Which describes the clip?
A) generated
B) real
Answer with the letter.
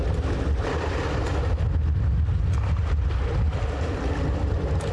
B